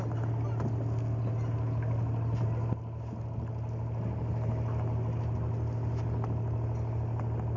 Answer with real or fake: real